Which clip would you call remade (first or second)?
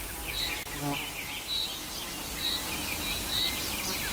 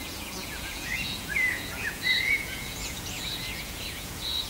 second